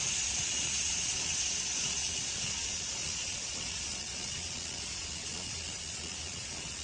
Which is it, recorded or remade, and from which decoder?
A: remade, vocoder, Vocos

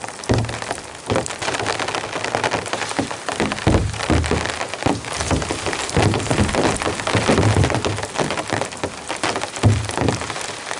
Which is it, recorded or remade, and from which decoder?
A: recorded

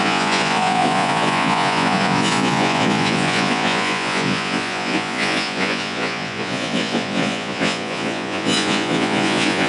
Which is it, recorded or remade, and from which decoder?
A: remade, vocoder, Vocos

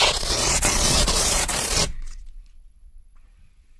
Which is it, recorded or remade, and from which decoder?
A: remade, vocoder, Vocos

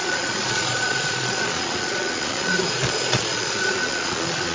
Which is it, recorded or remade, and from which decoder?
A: remade, vocoder, Vocos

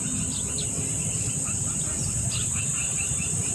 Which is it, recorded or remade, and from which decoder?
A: recorded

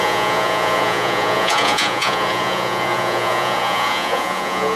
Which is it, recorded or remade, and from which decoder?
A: remade, vocoder, Vocos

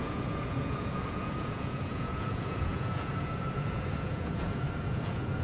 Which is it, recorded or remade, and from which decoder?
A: remade, vocoder, Vocos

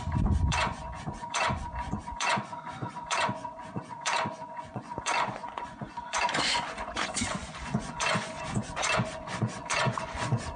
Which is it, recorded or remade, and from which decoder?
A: remade, vocoder, Vocos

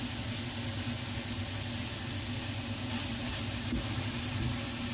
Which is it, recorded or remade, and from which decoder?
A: recorded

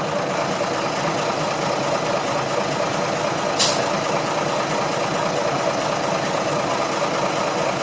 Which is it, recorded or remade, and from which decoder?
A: recorded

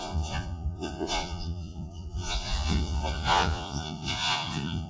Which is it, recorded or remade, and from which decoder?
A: remade, vocoder, Vocos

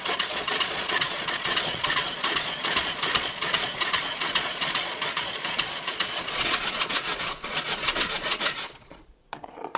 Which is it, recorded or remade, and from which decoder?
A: remade, vocoder, Vocos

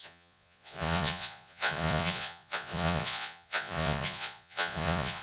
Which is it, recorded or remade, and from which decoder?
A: remade, vocoder, Vocos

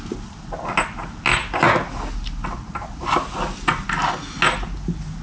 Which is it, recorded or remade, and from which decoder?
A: recorded